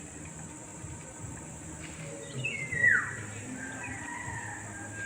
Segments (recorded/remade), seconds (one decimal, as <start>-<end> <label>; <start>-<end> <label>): 0.0-0.7 recorded; 0.7-1.4 remade; 1.4-5.1 recorded